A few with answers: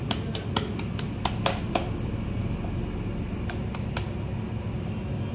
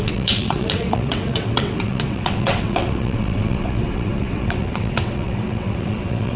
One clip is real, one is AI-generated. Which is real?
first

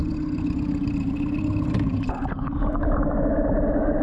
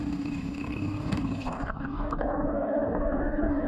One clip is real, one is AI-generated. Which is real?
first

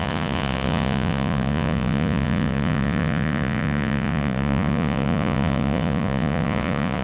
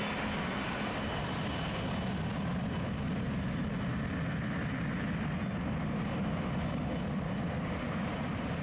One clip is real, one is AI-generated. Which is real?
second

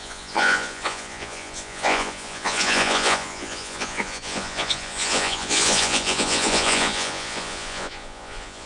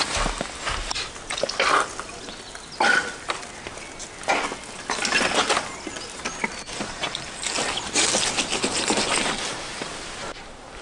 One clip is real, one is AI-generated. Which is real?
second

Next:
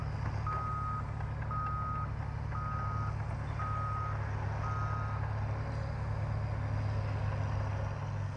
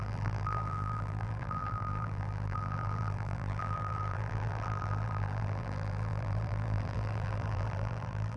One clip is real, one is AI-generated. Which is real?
first